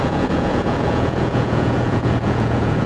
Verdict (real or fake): fake